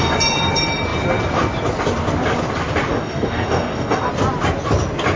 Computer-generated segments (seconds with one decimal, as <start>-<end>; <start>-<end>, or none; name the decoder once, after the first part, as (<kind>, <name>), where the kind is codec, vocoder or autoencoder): 2.9-4.1 (codec, DAC)